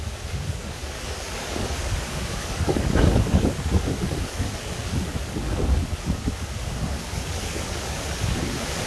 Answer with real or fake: fake